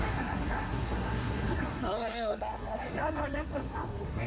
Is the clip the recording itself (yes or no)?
no